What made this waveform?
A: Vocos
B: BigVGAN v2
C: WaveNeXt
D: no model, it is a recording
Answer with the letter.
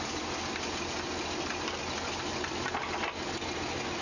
D